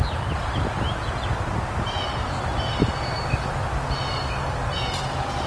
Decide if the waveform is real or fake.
real